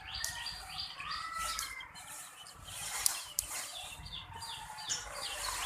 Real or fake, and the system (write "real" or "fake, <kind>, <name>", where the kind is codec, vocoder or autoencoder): fake, vocoder, BigVGAN v2